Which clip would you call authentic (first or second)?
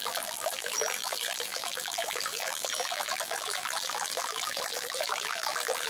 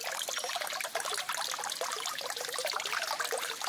second